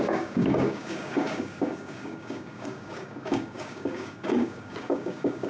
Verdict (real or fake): fake